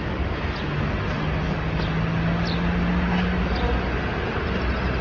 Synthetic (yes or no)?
no